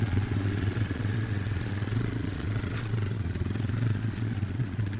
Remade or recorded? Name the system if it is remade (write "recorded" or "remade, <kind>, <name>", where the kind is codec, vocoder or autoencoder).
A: remade, vocoder, Vocos